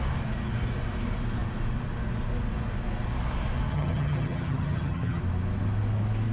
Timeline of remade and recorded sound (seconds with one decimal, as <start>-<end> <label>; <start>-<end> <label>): 0.0-3.7 recorded; 3.7-5.2 remade; 5.2-6.3 recorded